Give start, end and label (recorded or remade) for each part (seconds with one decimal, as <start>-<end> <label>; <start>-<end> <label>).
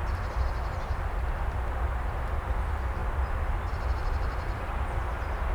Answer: 0.0-5.5 recorded